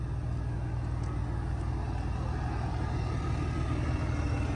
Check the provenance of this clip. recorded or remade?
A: recorded